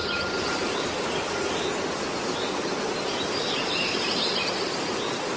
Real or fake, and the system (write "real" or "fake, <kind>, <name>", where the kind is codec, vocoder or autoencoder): real